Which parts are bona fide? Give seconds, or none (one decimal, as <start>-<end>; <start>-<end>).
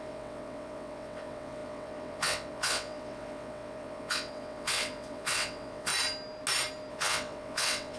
5.9-6.9